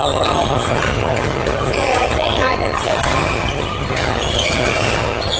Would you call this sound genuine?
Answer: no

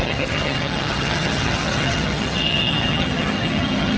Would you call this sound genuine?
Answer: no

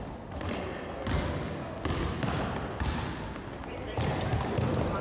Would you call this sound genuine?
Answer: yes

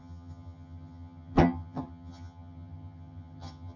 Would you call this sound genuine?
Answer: no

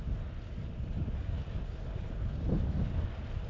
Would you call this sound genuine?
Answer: yes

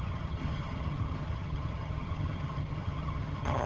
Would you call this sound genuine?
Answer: no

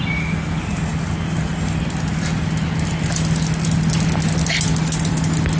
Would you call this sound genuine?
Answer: yes